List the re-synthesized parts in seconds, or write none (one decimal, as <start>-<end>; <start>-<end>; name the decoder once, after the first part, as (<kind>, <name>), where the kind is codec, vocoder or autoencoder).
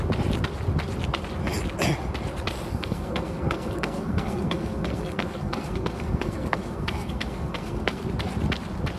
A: 2.7-8.0 (codec, SNAC)